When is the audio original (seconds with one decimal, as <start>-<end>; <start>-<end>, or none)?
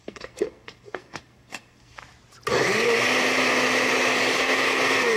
2.0-4.4